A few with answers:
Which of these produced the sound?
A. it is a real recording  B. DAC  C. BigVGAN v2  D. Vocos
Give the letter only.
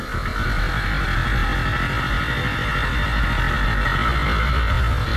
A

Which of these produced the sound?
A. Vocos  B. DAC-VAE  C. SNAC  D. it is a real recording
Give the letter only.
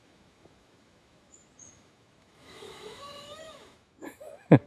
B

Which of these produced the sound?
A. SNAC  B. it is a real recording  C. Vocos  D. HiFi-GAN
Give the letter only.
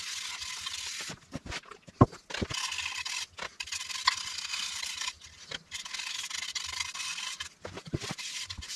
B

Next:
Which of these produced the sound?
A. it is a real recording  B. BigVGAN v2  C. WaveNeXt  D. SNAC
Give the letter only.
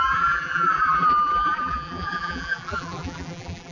B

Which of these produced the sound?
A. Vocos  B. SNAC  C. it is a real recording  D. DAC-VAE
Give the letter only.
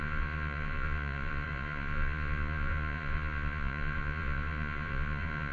A